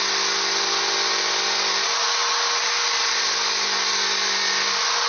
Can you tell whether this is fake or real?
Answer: real